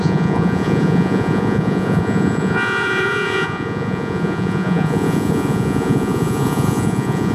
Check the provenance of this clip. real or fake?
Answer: fake